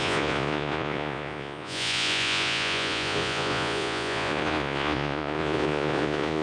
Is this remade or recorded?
remade